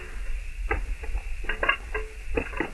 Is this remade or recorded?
recorded